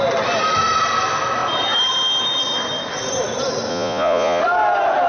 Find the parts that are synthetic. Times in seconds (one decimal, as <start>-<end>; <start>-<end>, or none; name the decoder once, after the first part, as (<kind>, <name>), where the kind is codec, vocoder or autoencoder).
3.7-4.4 (vocoder, Vocos)